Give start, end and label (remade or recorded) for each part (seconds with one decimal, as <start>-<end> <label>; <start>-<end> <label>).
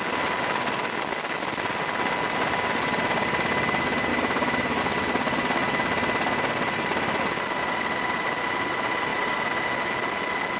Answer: 0.0-4.1 recorded; 4.1-4.8 remade; 4.8-10.6 recorded